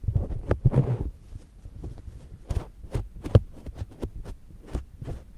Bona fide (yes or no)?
yes